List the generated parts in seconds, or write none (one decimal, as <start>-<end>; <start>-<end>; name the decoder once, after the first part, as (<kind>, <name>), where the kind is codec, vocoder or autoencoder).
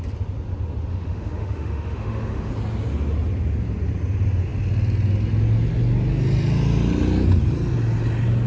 0.9-2.5 (autoencoder, DAC-VAE)